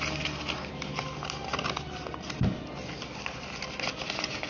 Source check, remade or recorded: recorded